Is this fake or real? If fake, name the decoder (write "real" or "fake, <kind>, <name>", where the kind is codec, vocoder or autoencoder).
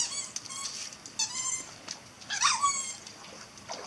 real